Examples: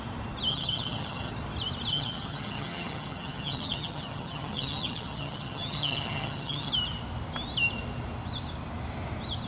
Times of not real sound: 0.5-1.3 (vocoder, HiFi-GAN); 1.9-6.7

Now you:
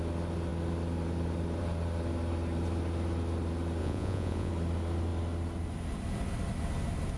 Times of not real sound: 3.8-4.5 (vocoder, Vocos)

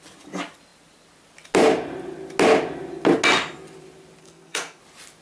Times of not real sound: 4.2-4.8 (codec, SNAC)